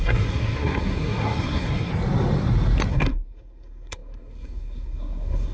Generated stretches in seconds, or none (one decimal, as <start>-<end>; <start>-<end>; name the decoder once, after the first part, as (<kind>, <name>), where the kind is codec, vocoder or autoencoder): 0.0-1.9 (codec, SNAC); 2.9-5.5